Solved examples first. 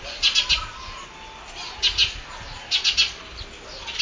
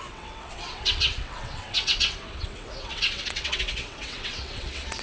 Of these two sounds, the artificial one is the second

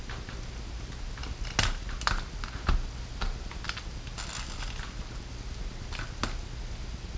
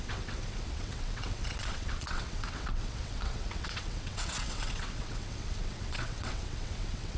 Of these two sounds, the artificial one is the second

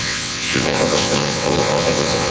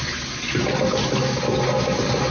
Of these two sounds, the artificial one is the first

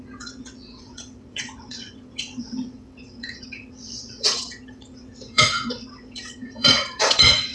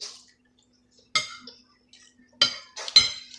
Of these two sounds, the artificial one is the first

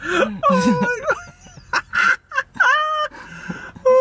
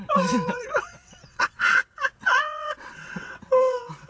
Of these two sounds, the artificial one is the second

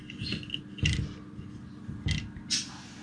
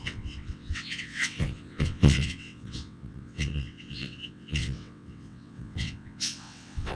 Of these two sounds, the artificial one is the second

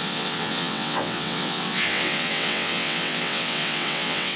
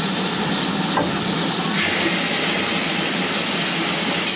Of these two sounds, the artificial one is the first